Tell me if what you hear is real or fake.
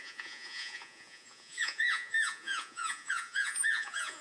fake